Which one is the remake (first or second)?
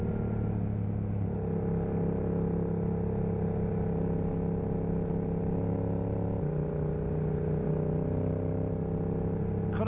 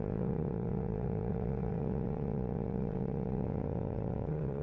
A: second